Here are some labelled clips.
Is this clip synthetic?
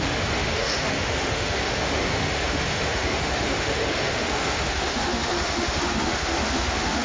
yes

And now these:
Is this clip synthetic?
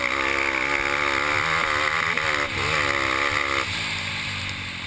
no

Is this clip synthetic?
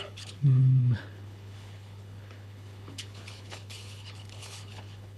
yes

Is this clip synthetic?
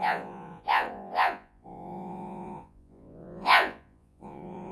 yes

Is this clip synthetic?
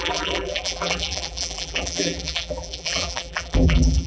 yes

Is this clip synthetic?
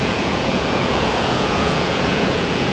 yes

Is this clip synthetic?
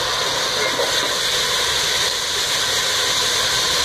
no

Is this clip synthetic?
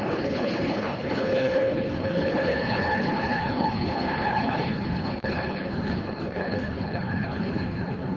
yes